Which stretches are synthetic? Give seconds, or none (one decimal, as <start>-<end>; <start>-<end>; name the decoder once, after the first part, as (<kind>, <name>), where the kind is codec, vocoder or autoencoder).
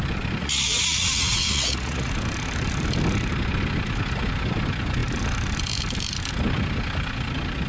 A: 0.4-2.1 (vocoder, Vocos)